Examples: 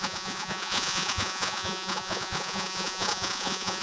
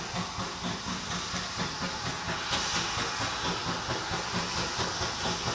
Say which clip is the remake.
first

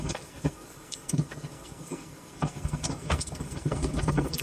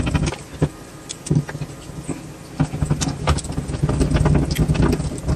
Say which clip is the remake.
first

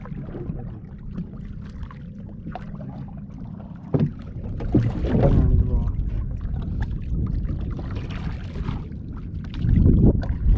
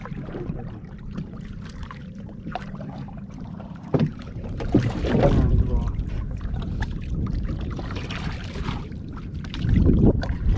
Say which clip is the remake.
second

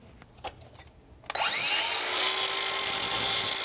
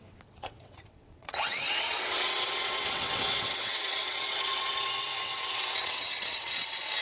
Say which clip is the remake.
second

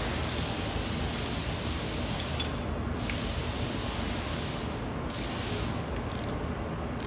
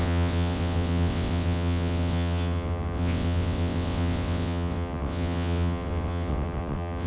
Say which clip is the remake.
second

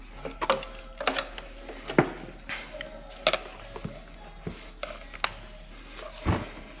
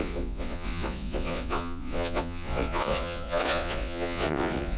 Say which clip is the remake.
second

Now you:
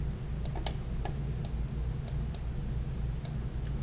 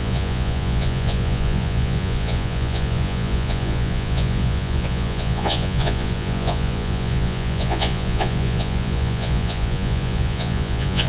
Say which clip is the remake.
second